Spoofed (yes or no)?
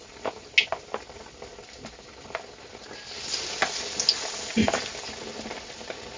no